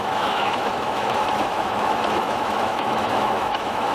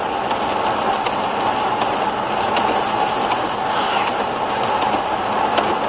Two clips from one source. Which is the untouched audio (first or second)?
second